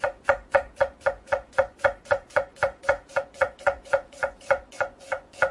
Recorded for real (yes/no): no